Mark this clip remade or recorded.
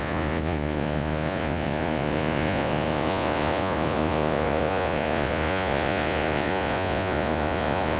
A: remade